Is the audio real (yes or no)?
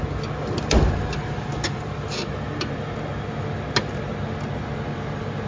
yes